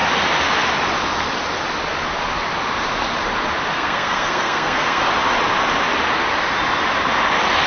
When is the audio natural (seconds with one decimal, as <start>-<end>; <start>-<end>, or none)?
0.0-3.7; 5.0-7.7